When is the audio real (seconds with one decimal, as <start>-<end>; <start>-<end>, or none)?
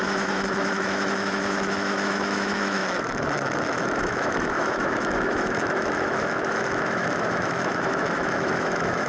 none